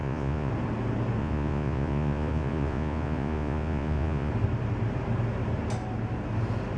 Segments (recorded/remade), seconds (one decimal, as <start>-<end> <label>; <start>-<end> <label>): 0.0-0.5 remade; 0.5-1.2 recorded; 1.2-4.3 remade; 4.3-6.8 recorded